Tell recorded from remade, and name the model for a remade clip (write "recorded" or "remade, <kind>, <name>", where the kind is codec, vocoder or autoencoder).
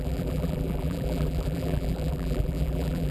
remade, vocoder, BigVGAN v2